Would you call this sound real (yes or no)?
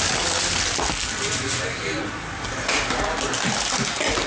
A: yes